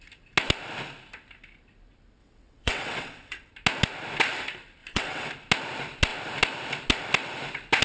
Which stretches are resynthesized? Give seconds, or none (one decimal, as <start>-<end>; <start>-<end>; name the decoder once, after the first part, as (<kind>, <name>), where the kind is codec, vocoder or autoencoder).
2.2-3.5 (vocoder, WaveNeXt); 4.8-5.3